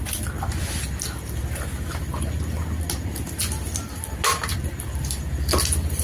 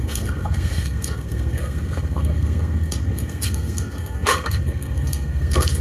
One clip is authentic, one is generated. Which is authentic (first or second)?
first